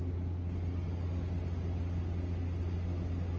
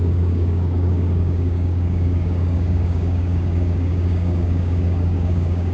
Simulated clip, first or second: second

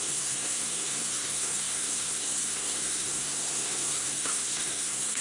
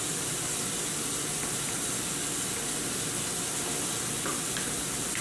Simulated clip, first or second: first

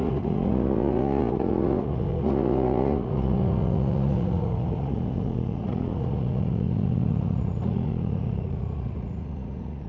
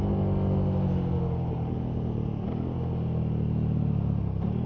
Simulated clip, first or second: first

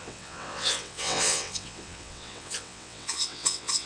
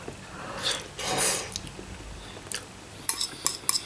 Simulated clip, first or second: first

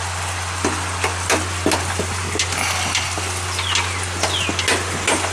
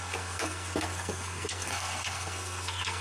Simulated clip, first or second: second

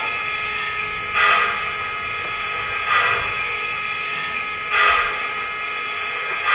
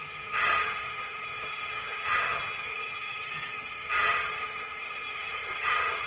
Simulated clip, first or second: second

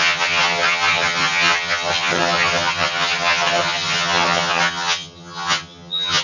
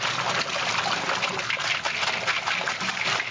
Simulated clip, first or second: first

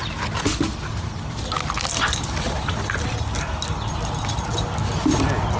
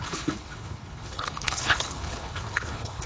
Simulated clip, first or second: second